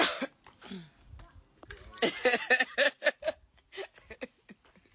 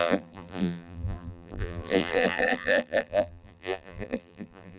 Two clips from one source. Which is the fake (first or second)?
second